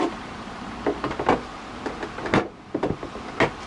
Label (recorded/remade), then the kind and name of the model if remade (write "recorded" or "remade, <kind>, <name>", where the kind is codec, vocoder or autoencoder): recorded